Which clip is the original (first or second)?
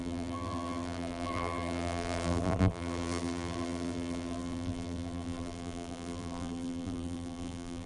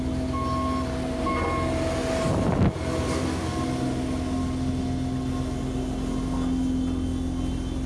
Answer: second